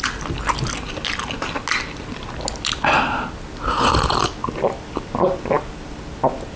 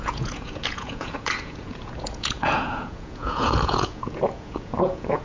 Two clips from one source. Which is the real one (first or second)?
first